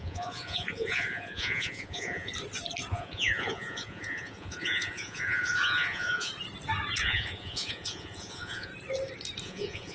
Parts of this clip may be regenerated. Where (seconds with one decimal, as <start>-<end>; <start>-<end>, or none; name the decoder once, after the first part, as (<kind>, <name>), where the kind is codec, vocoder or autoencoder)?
0.0-2.3 (vocoder, Vocos); 2.9-6.3; 7.0-8.7; 9.4-9.9